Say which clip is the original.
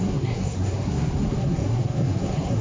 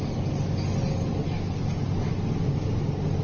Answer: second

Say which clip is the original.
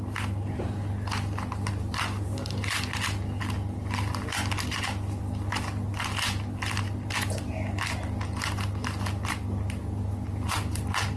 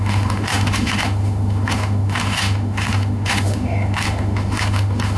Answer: first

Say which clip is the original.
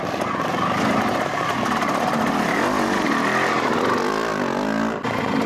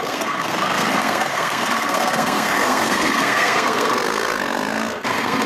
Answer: first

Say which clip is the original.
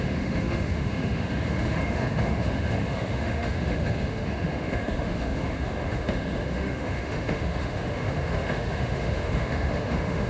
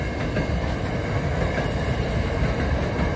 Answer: second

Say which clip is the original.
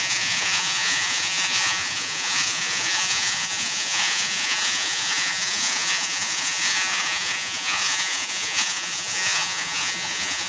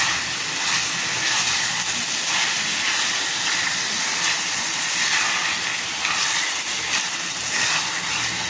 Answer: second